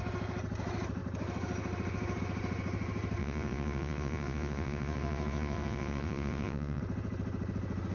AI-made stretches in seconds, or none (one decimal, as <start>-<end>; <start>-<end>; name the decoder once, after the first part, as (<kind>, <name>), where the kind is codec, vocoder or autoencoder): 3.2-6.8 (vocoder, Vocos)